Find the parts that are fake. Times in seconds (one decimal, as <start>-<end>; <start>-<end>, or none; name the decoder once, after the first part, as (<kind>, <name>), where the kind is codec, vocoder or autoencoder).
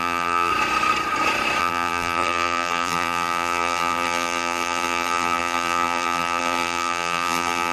0.0-0.5 (vocoder, BigVGAN v2); 1.6-7.7